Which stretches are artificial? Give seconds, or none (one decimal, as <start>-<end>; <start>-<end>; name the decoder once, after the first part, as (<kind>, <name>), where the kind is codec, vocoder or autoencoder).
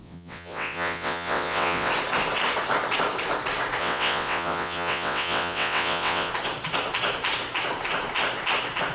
0.0-1.9 (vocoder, WaveNeXt); 3.8-6.3